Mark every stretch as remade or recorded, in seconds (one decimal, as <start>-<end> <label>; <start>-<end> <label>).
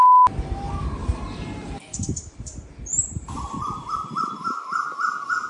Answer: 0.0-1.0 recorded; 1.0-4.3 remade; 4.3-5.5 recorded